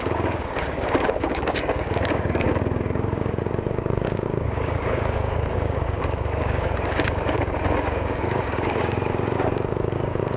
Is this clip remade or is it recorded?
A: remade